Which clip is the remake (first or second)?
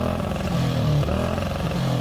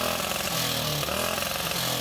first